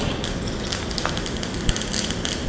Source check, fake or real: real